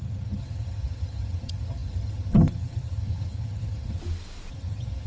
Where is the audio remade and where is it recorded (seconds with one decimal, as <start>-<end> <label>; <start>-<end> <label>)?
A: 0.0-4.0 remade; 4.0-4.5 recorded; 4.5-5.1 remade